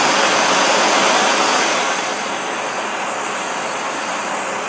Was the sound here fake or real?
real